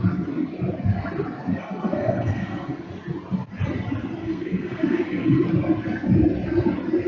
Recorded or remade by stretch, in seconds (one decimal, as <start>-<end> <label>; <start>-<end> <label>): 0.0-1.5 recorded; 1.5-2.9 remade; 2.9-4.2 recorded; 4.2-5.5 remade; 5.5-7.1 recorded